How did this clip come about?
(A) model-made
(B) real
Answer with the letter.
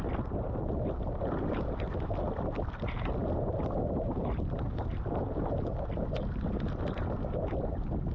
B